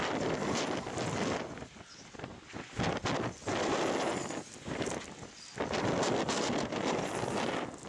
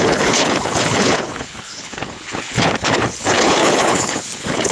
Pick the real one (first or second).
first